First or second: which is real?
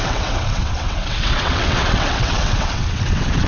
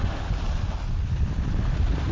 second